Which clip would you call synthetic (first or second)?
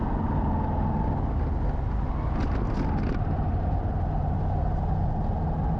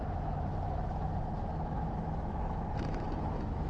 second